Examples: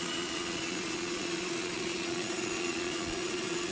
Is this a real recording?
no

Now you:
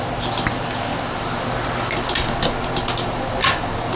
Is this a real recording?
yes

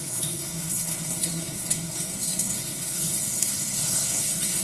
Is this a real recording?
no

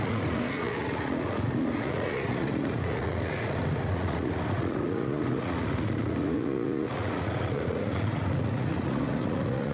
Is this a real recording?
no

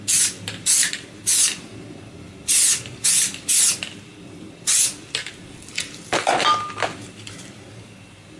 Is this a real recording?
yes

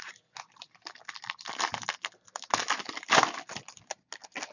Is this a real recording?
yes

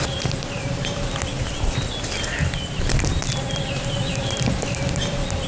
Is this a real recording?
yes